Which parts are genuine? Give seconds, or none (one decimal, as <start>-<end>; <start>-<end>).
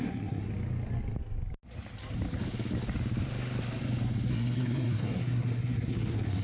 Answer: 0.5-4.3